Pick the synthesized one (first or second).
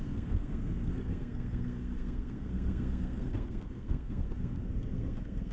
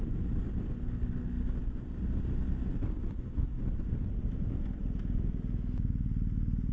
first